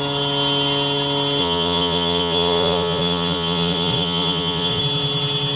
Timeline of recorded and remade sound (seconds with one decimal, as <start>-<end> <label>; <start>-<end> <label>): 0.0-1.4 recorded; 1.4-4.8 remade; 4.8-5.6 recorded